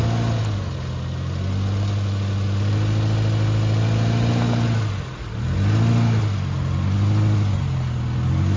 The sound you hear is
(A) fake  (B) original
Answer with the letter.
B